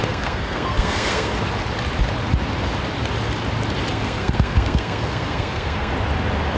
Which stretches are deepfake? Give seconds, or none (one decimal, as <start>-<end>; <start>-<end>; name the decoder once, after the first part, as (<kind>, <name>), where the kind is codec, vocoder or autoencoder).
0.0-1.3 (codec, SNAC); 3.9-5.9